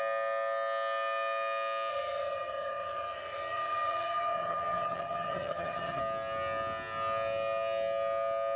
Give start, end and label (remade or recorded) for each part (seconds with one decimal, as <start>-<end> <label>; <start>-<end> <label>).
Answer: 0.0-1.9 recorded; 1.9-6.0 remade; 6.0-8.6 recorded